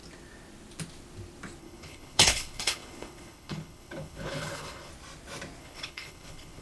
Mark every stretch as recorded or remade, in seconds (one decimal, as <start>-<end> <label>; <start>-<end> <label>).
0.0-1.6 recorded; 1.6-4.9 remade; 4.9-5.6 recorded; 5.6-6.6 remade

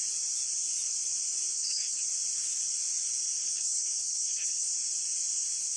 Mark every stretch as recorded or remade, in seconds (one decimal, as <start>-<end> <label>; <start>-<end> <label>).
0.0-1.5 recorded; 1.5-2.1 remade; 2.1-3.4 recorded; 3.4-4.7 remade; 4.7-5.8 recorded

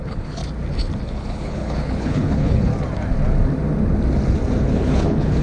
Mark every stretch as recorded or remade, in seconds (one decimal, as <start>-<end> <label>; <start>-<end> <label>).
0.0-0.4 remade; 0.4-1.0 recorded; 1.0-2.7 remade; 2.7-4.7 recorded; 4.7-5.4 remade

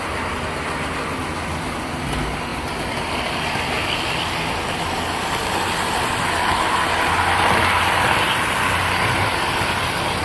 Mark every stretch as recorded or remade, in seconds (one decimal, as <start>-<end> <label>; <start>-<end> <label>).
0.0-10.2 recorded

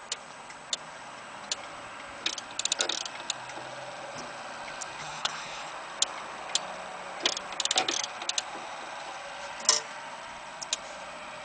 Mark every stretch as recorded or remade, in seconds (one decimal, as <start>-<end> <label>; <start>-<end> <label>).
0.0-5.0 recorded; 5.0-5.7 remade; 5.7-11.4 recorded

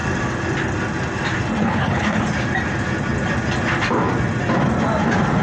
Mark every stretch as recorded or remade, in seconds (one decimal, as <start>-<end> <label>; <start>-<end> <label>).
0.0-1.6 recorded; 1.6-2.2 remade; 2.2-5.4 recorded

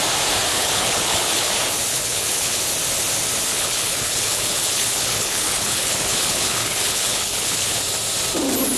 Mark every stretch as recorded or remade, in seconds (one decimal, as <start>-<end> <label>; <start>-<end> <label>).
0.0-0.5 recorded; 0.5-1.5 remade; 1.5-1.9 recorded; 1.9-2.6 remade; 2.6-3.5 recorded; 3.5-7.8 remade; 7.8-8.8 recorded

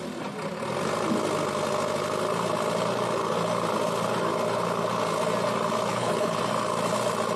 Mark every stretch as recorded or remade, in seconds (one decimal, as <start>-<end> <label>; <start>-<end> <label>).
0.0-5.9 recorded; 5.9-6.4 remade; 6.4-7.4 recorded